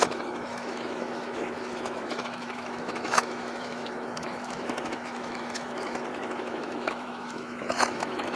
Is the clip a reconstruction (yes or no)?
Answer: yes